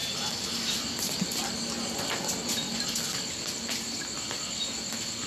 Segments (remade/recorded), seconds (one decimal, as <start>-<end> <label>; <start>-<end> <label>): 0.0-5.3 recorded